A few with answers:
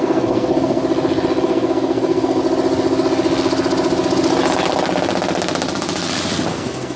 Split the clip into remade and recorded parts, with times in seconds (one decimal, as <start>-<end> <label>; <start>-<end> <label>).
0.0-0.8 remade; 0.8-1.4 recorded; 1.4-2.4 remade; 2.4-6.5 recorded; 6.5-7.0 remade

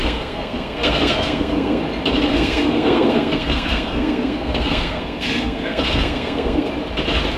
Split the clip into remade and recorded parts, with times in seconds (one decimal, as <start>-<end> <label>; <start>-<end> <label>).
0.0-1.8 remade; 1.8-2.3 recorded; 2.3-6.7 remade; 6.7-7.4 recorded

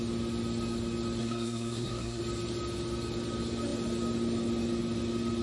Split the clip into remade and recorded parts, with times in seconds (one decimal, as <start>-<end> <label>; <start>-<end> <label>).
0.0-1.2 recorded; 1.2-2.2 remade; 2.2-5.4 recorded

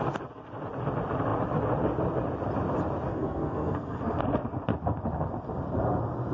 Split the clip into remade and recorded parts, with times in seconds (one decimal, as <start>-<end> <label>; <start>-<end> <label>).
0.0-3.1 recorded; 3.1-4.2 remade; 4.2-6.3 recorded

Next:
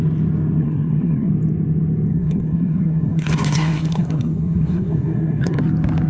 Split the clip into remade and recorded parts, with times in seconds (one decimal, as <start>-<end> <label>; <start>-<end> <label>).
0.0-0.6 recorded; 0.6-1.3 remade; 1.3-2.1 recorded; 2.1-5.6 remade; 5.6-6.1 recorded

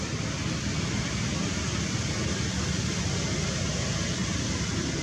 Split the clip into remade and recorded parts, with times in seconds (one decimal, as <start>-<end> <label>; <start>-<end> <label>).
0.0-5.0 recorded

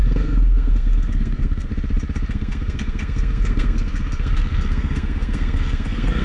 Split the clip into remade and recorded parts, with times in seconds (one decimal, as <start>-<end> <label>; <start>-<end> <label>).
0.0-1.7 remade; 1.7-2.3 recorded; 2.3-6.2 remade